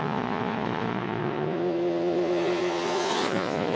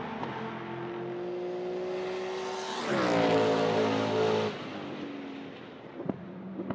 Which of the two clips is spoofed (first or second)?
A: first